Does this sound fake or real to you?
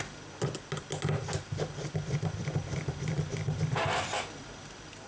real